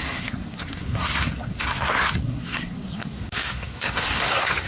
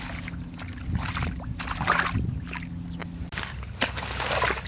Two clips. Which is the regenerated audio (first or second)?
first